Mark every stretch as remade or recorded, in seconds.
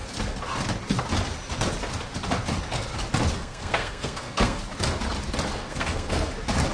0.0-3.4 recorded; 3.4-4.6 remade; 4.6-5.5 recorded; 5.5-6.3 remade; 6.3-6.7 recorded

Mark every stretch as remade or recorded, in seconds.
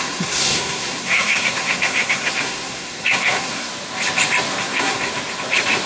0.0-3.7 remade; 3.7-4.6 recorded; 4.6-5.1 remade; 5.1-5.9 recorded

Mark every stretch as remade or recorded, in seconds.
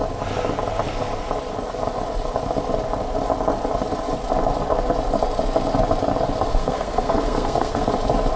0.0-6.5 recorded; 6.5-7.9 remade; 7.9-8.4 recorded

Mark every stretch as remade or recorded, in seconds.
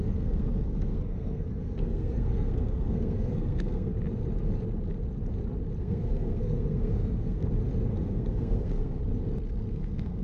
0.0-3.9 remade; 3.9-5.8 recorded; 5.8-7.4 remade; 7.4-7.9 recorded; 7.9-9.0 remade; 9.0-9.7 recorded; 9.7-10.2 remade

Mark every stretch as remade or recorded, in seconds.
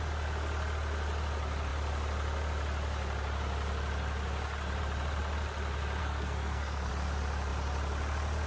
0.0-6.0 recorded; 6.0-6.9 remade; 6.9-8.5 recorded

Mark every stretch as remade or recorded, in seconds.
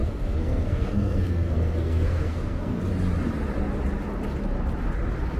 0.0-2.8 remade; 2.8-5.4 recorded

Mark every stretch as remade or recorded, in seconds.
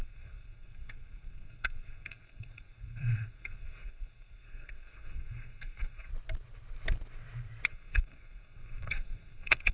0.0-6.1 remade; 6.1-7.7 recorded; 7.7-9.7 remade